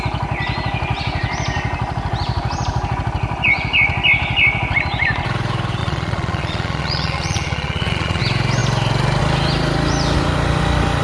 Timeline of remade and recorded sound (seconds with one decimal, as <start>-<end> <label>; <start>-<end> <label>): 0.0-5.8 recorded; 5.8-8.2 remade; 8.2-11.0 recorded